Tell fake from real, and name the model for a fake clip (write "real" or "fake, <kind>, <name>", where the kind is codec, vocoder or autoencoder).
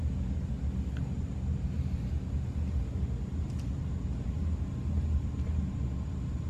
real